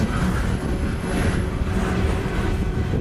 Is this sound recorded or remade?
recorded